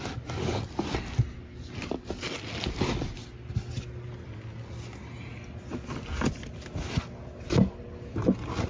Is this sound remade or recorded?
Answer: recorded